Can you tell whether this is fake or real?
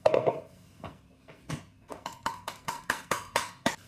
fake